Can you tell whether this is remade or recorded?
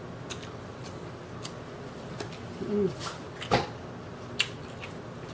recorded